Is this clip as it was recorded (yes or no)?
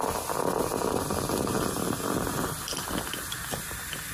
yes